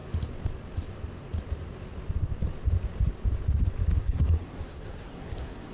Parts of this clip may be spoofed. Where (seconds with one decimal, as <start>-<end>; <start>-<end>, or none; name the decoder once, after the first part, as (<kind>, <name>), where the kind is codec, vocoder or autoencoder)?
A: 4.0-5.7 (codec, SNAC)